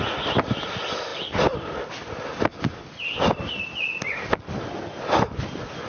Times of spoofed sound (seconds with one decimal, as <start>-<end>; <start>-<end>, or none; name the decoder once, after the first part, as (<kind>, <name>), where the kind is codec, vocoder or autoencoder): none